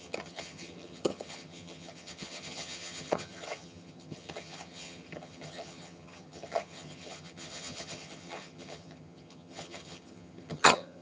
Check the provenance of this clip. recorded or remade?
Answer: remade